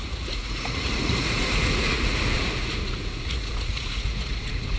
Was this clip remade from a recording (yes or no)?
yes